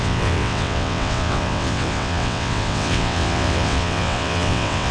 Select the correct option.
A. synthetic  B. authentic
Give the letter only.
A